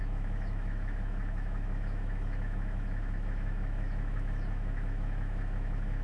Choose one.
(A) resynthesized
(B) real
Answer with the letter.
A